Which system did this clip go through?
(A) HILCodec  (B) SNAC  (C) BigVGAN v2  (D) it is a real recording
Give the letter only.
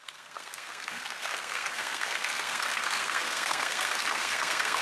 B